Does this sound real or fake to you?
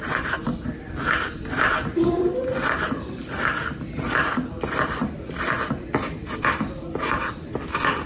real